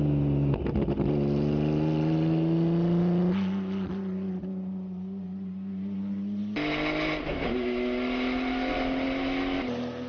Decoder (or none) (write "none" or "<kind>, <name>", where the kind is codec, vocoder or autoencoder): none